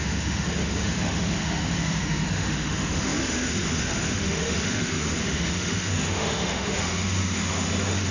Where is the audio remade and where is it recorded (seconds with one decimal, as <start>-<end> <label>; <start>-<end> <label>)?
0.0-8.1 remade